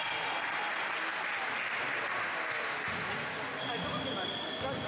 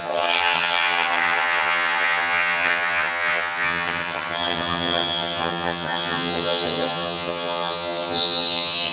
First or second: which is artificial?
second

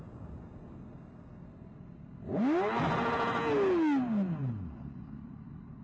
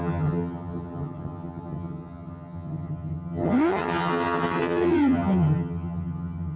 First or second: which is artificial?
second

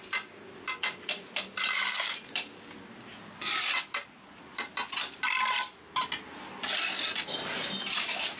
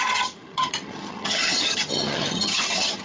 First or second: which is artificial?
second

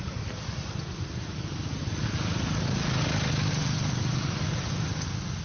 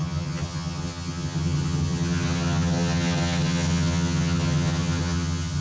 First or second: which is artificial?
second